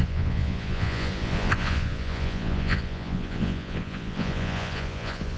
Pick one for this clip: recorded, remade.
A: remade